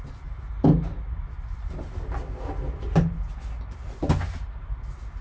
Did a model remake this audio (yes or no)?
no